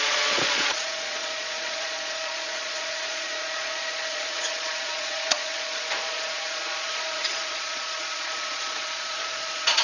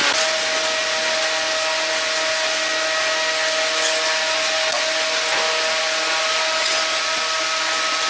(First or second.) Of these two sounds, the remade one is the first